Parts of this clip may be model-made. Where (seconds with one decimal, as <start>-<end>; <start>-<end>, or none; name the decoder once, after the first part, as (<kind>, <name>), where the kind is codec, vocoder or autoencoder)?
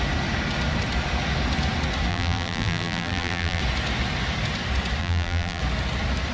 2.1-3.6 (vocoder, BigVGAN v2); 5.0-5.6